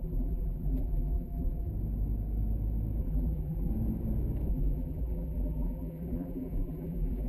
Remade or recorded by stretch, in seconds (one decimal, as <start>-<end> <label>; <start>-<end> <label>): 0.0-1.7 remade; 1.7-3.0 recorded; 3.0-3.7 remade; 3.7-4.5 recorded; 4.5-7.3 remade